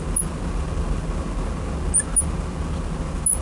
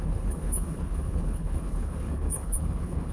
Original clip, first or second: first